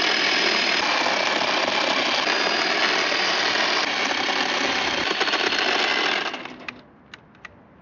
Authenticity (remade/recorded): recorded